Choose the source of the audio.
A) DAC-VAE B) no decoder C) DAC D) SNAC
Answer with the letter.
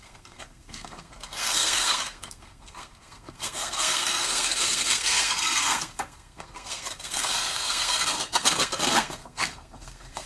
D